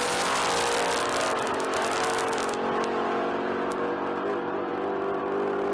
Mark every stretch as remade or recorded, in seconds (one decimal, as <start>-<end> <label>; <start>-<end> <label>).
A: 0.0-5.7 recorded